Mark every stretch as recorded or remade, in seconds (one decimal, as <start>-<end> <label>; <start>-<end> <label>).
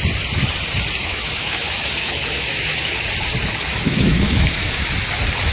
0.0-1.0 recorded; 1.0-3.0 remade; 3.0-3.7 recorded; 3.7-4.9 remade; 4.9-5.5 recorded